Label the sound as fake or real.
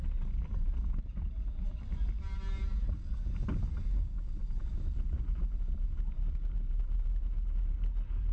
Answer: real